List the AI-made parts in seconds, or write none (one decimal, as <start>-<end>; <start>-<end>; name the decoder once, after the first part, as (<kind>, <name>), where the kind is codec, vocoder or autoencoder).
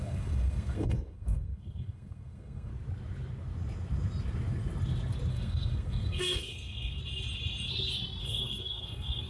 0.0-2.7 (codec, SNAC); 5.3-7.0; 8.2-9.3